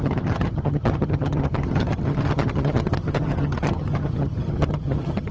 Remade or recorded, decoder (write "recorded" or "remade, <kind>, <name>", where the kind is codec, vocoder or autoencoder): remade, vocoder, HiFi-GAN